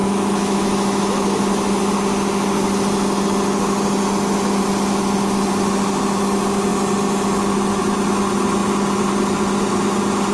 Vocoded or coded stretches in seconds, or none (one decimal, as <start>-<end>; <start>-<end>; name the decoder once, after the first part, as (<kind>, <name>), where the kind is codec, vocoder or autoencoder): 0.0-1.4 (autoencoder, DAC-VAE)